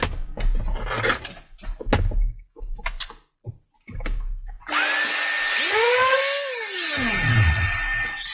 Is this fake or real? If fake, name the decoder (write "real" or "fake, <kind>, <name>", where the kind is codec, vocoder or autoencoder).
real